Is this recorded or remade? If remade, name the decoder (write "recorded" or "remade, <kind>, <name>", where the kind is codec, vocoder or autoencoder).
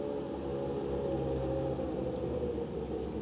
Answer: recorded